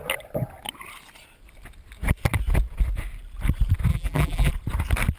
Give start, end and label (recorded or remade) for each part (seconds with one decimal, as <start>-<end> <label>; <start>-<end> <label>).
0.0-3.9 recorded; 3.9-4.5 remade; 4.5-5.2 recorded